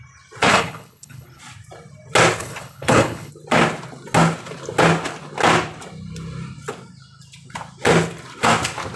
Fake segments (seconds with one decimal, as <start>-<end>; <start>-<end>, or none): 0.5-1.4; 2.4-3.3